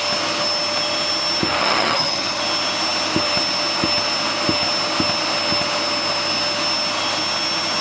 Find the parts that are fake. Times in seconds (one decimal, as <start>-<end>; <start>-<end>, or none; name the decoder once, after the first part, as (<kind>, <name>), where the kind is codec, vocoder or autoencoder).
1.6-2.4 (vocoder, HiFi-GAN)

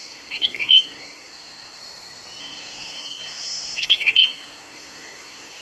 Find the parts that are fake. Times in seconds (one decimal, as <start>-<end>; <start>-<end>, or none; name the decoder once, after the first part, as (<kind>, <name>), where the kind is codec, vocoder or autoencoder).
0.0-1.8 (codec, SNAC); 2.4-5.6

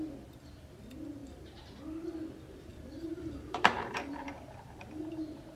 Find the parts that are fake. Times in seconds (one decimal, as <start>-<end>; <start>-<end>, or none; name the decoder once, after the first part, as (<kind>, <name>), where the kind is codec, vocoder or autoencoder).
1.2-1.8 (vocoder, BigVGAN v2); 2.7-5.0